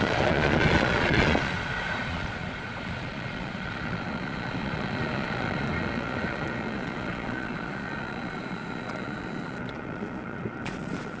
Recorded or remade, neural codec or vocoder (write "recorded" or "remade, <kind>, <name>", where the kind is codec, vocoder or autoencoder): remade, vocoder, Vocos